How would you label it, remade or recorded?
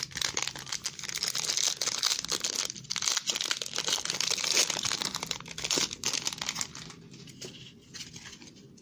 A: recorded